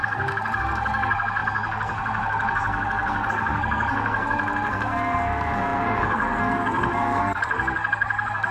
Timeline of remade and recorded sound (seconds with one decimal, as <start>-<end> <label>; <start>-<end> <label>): 0.0-8.5 remade